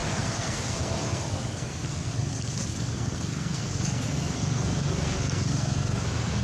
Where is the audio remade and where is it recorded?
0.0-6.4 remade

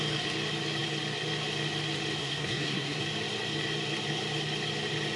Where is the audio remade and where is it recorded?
0.0-2.2 recorded; 2.2-3.0 remade; 3.0-5.2 recorded

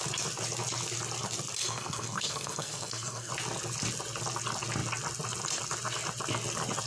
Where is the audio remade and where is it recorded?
0.0-1.6 recorded; 1.6-3.3 remade; 3.3-6.9 recorded

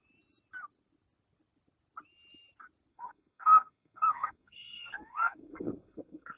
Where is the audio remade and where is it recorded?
0.0-2.9 recorded; 2.9-6.4 remade

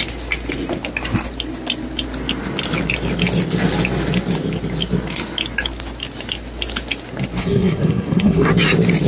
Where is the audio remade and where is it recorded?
0.0-7.4 recorded; 7.4-8.5 remade; 8.5-9.1 recorded

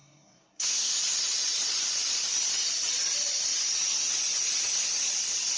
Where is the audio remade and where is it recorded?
0.0-0.9 remade; 0.9-5.6 recorded

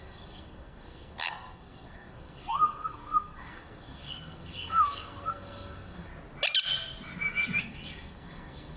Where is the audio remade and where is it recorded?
0.0-6.1 remade; 6.1-7.6 recorded; 7.6-8.8 remade

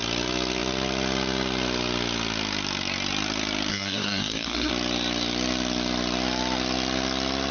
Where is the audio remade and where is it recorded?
0.0-3.7 recorded; 3.7-4.7 remade; 4.7-7.5 recorded